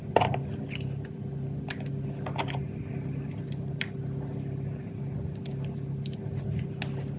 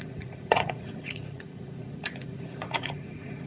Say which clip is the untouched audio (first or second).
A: first